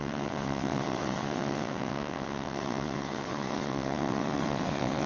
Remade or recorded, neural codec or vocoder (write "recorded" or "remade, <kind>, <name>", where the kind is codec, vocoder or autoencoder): remade, vocoder, WaveNeXt